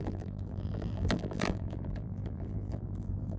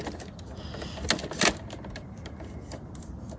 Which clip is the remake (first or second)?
first